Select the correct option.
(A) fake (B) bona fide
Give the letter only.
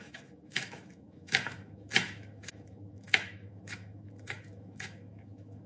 A